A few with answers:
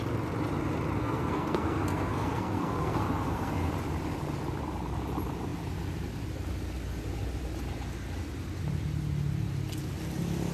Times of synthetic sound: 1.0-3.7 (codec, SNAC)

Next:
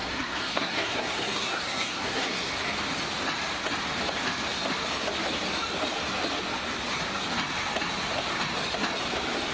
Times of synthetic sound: 0.0-2.5 (codec, SNAC)

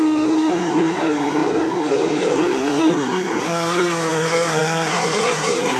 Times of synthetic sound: 0.0-5.8 (codec, SNAC)

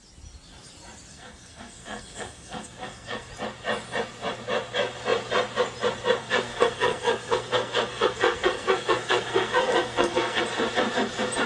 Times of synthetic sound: 1.1-3.3 (codec, SNAC); 6.2-10.4

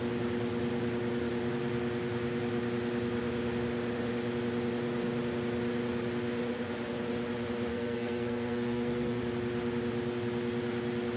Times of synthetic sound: 7.7-9.2 (codec, SNAC)

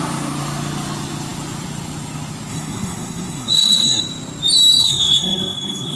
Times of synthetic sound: 2.5-4.0 (codec, SNAC); 4.8-6.0

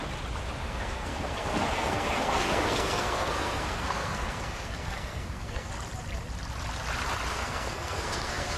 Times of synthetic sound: 0.6-5.7 (codec, SNAC); 7.3-8.6